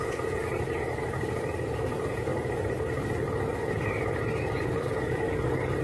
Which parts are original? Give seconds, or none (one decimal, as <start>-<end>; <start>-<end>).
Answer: 0.4-1.7; 2.3-4.4